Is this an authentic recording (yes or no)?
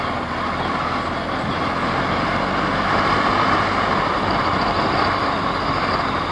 yes